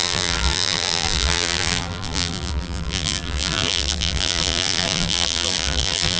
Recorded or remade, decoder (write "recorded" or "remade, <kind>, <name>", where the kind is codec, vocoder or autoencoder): remade, vocoder, BigVGAN v2